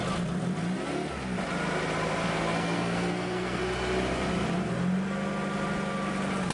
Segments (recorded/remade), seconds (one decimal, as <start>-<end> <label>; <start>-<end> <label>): 0.0-2.3 recorded; 2.3-3.6 remade; 3.6-6.5 recorded